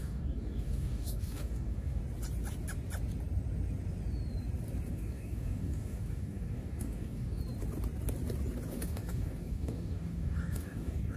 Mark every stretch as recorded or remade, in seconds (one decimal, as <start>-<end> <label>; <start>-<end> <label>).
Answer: 0.0-2.0 remade; 2.0-4.9 recorded; 4.9-7.4 remade; 7.4-8.7 recorded; 8.7-11.2 remade